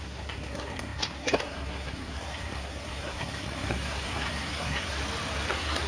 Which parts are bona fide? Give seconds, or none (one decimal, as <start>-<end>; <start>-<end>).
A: 5.0-5.5